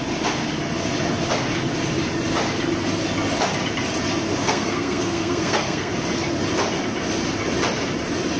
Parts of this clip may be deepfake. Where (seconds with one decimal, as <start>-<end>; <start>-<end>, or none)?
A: 4.4-5.9